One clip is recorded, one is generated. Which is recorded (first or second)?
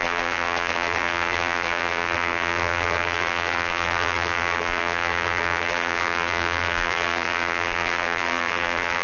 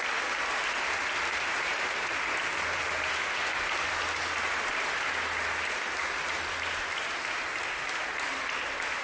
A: second